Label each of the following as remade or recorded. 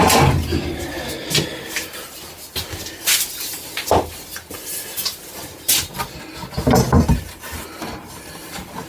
recorded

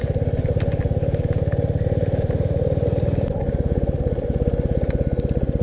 recorded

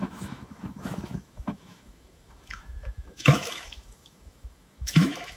remade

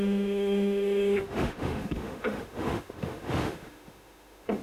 remade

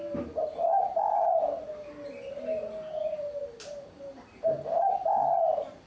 recorded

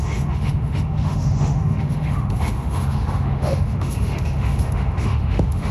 remade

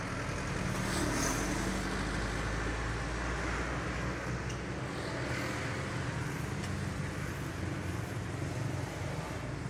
recorded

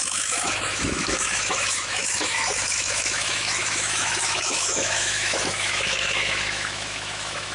remade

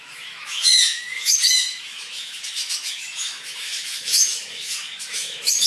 remade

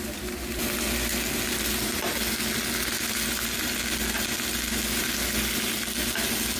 recorded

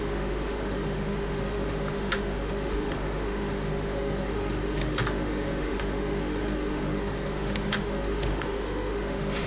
remade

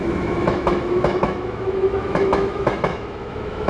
remade